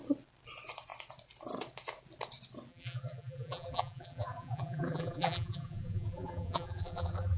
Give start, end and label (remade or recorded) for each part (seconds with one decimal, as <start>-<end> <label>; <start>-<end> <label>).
0.0-2.7 recorded; 2.7-7.4 remade